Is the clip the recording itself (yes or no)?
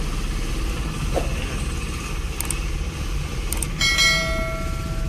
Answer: yes